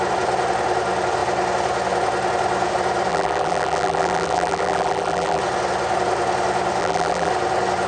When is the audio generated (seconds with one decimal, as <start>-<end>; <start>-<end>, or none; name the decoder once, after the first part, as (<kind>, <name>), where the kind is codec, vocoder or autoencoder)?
3.1-5.4 (vocoder, BigVGAN v2); 6.8-7.3

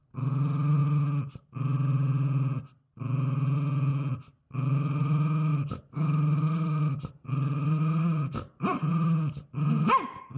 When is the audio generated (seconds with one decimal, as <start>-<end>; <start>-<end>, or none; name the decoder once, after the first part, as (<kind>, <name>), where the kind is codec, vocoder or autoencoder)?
4.3-5.0 (vocoder, BigVGAN v2); 5.5-8.9

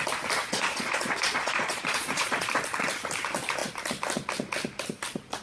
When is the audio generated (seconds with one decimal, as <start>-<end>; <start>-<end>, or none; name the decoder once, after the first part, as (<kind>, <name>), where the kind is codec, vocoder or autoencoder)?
0.4-2.5 (vocoder, Vocos)

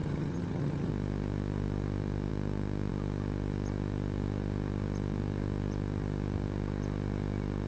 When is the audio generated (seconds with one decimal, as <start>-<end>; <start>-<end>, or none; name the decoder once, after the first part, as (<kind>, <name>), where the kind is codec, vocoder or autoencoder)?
0.0-0.9 (vocoder, HiFi-GAN)

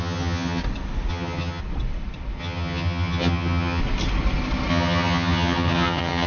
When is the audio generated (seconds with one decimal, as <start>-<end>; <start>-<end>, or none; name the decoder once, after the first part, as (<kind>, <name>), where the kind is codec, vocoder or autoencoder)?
0.0-0.6 (vocoder, HiFi-GAN); 1.1-1.6; 2.4-3.8; 4.7-6.3

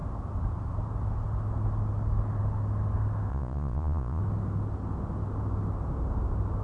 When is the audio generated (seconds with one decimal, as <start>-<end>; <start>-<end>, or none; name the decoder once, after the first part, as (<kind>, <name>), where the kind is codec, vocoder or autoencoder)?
3.3-4.2 (vocoder, Vocos)

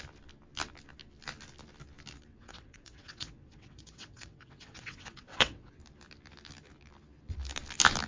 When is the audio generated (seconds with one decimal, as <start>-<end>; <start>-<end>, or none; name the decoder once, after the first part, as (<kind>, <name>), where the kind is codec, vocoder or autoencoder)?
2.3-5.7 (vocoder, WaveNeXt)

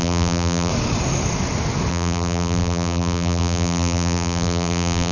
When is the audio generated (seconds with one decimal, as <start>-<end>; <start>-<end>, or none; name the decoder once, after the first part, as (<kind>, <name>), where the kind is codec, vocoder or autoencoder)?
0.0-0.7 (vocoder, BigVGAN v2); 1.9-5.1